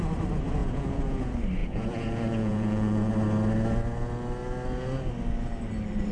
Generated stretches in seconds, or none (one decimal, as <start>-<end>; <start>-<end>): 0.6-1.2; 1.6-3.1